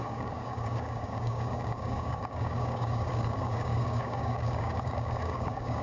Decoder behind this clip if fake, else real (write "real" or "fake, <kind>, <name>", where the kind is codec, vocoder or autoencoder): fake, codec, DAC